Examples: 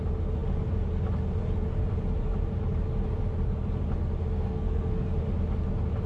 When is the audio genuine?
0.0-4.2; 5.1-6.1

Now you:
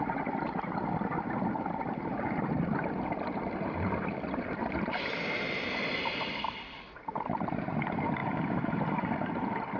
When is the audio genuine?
8.2-9.3

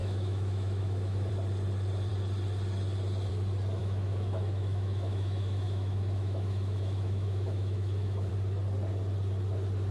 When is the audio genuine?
1.3-3.8; 8.3-9.9

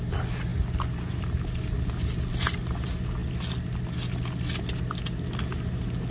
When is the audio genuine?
0.0-6.1

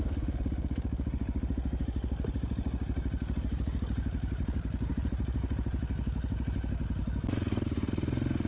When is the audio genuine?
0.0-8.5

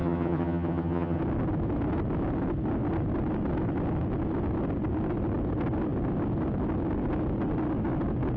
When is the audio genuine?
1.2-8.4

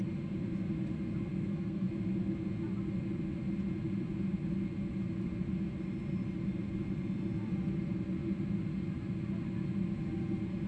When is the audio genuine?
0.0-1.3; 1.9-10.7

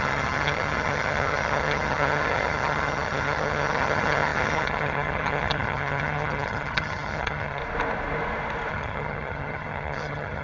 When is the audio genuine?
7.6-8.7